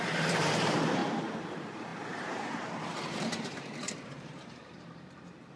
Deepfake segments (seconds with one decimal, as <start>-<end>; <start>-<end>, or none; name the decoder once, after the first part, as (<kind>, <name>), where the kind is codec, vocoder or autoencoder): 0.0-5.6 (vocoder, BigVGAN v2)